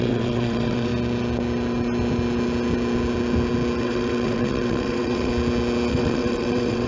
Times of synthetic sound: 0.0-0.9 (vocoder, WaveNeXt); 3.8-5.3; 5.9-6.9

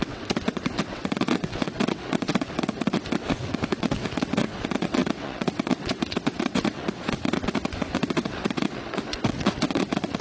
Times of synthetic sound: 0.0-10.2 (vocoder, WaveNeXt)

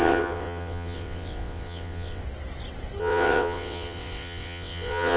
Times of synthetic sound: 0.0-2.2 (vocoder, WaveNeXt); 3.0-5.2

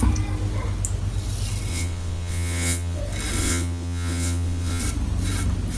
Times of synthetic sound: 1.7-3.0 (vocoder, WaveNeXt); 3.4-4.8